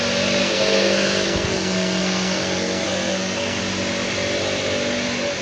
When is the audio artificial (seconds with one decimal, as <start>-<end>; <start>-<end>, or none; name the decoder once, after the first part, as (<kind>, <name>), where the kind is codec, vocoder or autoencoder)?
0.4-3.6 (codec, SNAC)